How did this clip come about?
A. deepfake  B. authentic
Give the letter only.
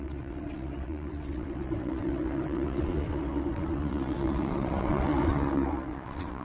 A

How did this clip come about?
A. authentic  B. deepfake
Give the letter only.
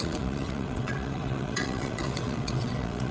B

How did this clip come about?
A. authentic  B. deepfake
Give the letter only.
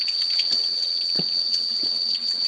B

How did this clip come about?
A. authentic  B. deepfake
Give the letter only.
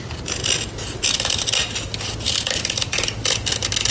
A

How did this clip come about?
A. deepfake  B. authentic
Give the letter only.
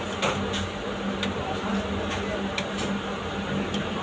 B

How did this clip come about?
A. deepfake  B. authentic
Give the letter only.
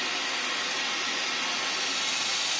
B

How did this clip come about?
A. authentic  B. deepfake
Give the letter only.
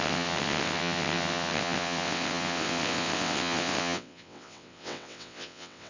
B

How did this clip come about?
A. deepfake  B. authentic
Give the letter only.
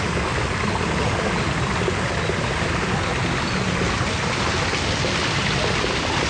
B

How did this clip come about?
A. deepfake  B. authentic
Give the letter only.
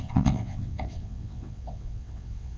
A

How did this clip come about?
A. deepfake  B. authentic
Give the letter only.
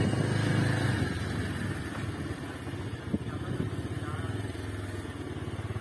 B